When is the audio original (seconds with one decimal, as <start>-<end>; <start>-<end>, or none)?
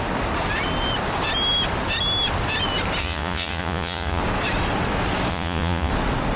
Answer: 0.0-3.0; 4.2-5.3; 5.9-6.4